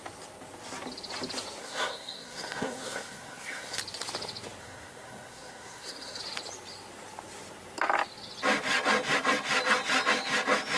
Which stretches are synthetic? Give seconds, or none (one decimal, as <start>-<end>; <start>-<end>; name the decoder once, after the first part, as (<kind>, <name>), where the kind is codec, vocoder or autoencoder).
1.6-3.8 (codec, SNAC); 4.6-6.2